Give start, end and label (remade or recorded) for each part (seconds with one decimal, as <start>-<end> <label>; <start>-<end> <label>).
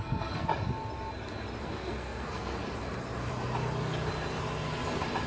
0.0-0.5 remade; 0.5-1.6 recorded; 1.6-2.6 remade; 2.6-5.3 recorded